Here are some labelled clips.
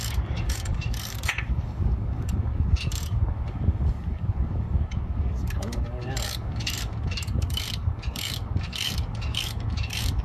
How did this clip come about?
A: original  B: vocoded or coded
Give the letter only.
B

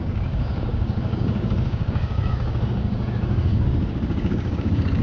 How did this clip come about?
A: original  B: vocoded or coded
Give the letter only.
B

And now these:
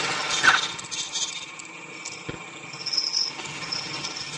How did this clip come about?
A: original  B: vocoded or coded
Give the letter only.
A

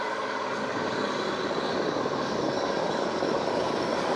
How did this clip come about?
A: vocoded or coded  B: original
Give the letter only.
A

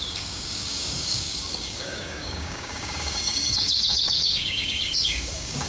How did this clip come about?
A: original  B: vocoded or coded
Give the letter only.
B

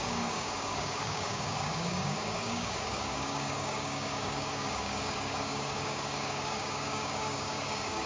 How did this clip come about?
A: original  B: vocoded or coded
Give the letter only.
B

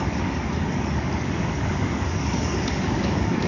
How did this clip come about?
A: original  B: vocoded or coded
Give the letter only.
B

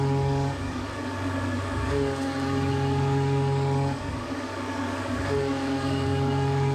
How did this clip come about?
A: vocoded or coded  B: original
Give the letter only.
A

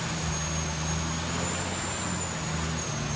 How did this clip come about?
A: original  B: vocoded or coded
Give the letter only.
A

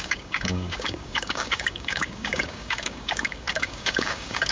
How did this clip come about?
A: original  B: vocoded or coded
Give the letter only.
B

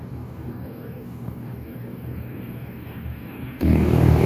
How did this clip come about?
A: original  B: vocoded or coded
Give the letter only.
B